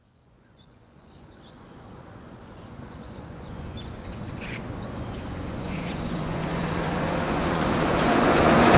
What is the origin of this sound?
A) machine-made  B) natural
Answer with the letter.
A